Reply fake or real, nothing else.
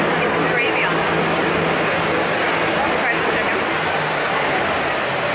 real